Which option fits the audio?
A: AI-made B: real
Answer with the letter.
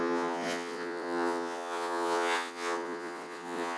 A